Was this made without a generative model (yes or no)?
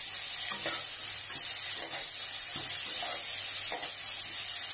yes